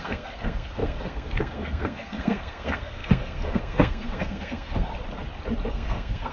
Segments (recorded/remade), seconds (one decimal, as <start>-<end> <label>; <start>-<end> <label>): 0.0-4.9 remade; 4.9-5.7 recorded; 5.7-6.3 remade